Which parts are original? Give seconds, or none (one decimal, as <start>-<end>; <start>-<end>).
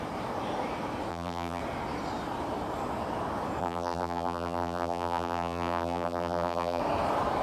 0.0-1.1; 1.6-3.6; 6.8-7.4